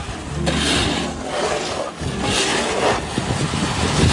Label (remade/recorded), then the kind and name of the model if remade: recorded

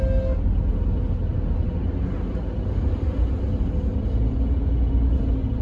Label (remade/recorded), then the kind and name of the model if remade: recorded